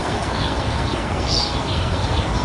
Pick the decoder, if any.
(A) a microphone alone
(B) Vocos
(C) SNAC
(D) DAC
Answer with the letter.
C